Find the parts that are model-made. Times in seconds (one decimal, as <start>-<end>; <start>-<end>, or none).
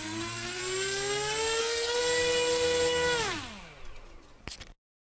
0.0-0.6; 1.6-2.0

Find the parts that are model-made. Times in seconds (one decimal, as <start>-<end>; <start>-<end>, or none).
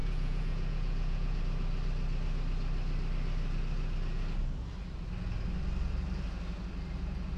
0.0-1.4